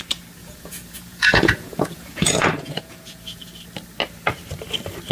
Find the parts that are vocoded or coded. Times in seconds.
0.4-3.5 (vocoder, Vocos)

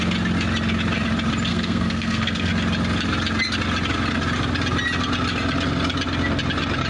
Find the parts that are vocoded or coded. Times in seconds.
1.5-2.5 (codec, SNAC)

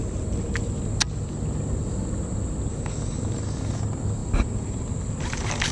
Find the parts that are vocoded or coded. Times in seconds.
2.7-3.8 (codec, DAC)

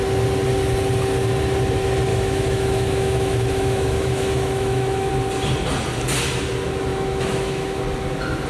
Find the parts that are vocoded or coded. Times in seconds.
2.1-5.1 (autoencoder, DAC-VAE); 6.9-7.8

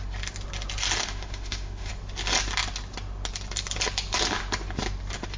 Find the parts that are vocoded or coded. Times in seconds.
1.0-1.9 (autoencoder, DAC-VAE)